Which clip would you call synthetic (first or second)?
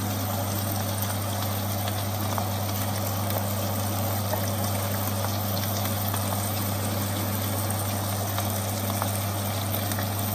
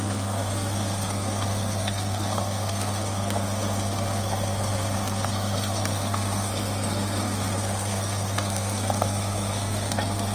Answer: second